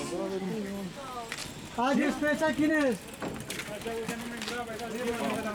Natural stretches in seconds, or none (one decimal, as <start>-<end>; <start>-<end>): 0.0-5.5